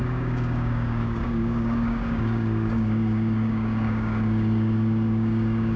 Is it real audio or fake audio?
fake